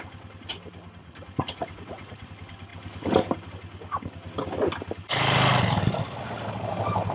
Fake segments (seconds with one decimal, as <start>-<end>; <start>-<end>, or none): 1.0-2.3